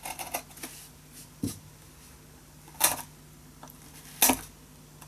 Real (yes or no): yes